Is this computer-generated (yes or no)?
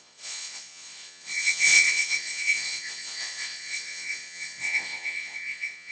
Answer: yes